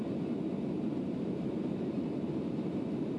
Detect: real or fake real